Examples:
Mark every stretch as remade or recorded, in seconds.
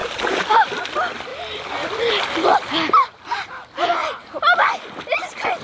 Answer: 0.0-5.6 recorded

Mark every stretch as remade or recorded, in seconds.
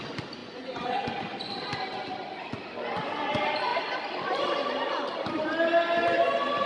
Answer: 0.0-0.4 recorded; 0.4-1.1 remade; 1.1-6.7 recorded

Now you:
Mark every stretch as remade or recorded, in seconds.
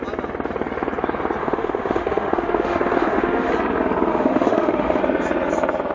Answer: 0.0-1.4 recorded; 1.4-3.5 remade; 3.5-4.1 recorded; 4.1-5.0 remade; 5.0-5.9 recorded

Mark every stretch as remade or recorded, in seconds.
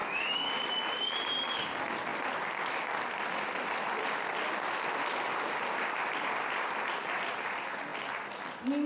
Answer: 0.0-0.5 remade; 0.5-8.9 recorded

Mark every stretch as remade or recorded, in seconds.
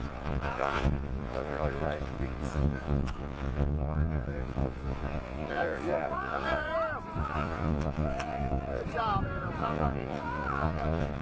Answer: 0.0-6.7 remade; 6.7-7.2 recorded; 7.2-8.8 remade; 8.8-9.6 recorded; 9.6-11.2 remade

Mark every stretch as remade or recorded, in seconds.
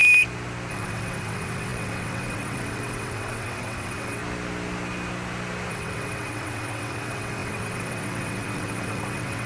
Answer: 0.0-0.7 recorded; 0.7-4.2 remade; 4.2-5.7 recorded; 5.7-9.5 remade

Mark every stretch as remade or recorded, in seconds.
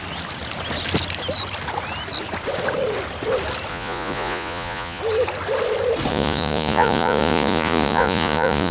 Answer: 0.0-3.7 recorded; 3.7-5.0 remade; 5.0-6.1 recorded; 6.1-8.7 remade